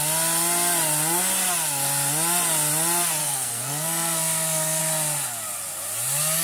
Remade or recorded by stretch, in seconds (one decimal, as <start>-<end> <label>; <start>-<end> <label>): 0.0-3.2 recorded; 3.2-4.8 remade; 4.8-6.4 recorded